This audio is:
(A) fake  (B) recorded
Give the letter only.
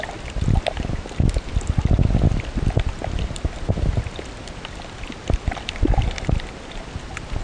B